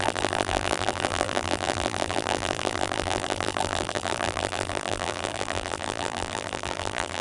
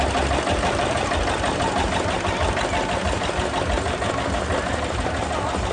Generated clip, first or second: first